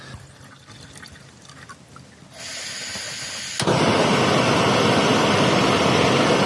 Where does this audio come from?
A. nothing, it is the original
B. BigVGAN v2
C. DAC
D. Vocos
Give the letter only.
A